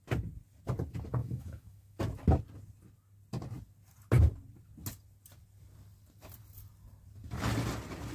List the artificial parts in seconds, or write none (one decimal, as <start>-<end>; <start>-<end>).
1.2-2.0